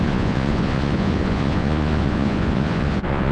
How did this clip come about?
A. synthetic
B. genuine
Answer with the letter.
A